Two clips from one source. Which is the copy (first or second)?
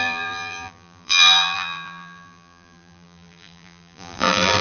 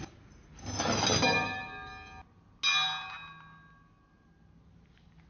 first